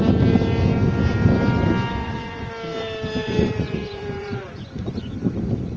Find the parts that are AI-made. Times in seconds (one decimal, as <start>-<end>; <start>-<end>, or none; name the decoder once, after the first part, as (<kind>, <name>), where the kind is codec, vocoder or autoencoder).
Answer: 2.0-2.5 (vocoder, Vocos); 3.2-5.1